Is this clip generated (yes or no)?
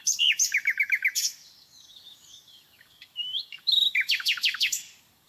yes